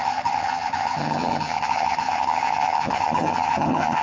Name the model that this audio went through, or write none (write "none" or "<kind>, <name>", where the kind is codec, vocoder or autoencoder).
vocoder, HiFi-GAN